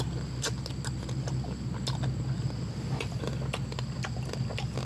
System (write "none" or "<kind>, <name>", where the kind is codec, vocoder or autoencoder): none